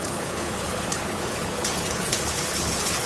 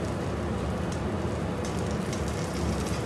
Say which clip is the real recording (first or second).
second